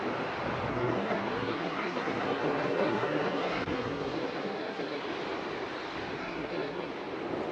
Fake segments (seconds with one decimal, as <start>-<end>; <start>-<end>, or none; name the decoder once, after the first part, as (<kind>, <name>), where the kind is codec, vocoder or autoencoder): 0.7-5.0 (codec, SNAC); 6.2-6.9